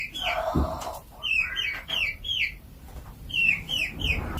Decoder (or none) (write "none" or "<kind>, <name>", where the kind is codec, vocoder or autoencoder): vocoder, BigVGAN v2